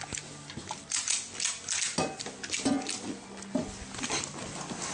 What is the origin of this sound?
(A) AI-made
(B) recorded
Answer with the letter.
B